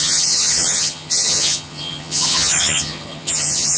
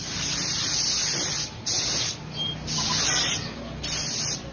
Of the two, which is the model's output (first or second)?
first